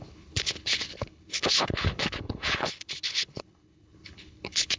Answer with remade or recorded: remade